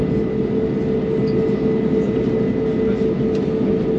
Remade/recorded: recorded